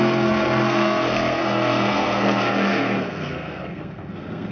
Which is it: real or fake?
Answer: fake